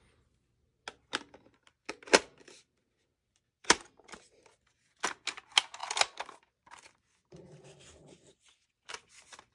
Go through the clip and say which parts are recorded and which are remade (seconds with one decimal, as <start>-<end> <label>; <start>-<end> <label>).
0.0-3.6 recorded; 3.6-4.4 remade; 4.4-5.8 recorded; 5.8-8.7 remade; 8.7-9.5 recorded